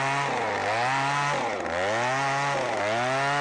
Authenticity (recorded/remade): recorded